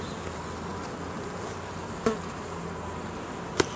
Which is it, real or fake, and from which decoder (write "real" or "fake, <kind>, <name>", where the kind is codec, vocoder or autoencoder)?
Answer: real